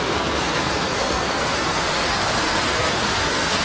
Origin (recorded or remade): remade